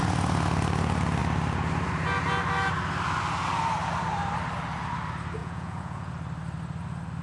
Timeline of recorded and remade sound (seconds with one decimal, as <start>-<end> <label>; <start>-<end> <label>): 0.0-5.4 recorded; 5.4-6.1 remade; 6.1-7.2 recorded